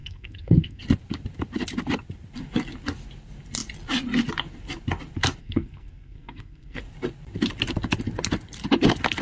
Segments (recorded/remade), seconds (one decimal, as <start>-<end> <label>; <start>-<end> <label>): 0.0-0.8 remade; 0.8-5.4 recorded; 5.4-6.8 remade; 6.8-9.2 recorded